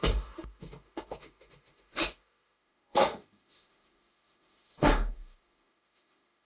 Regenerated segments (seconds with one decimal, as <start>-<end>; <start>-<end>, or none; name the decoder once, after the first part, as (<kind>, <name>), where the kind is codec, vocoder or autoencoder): 0.0-6.5 (autoencoder, DAC-VAE)